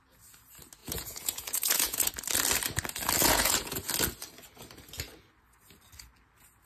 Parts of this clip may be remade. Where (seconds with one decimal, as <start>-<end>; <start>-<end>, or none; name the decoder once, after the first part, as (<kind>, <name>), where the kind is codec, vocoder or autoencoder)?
0.8-2.1 (vocoder, Vocos); 3.2-3.9